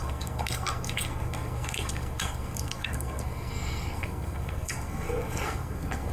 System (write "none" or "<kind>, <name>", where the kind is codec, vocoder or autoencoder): codec, SNAC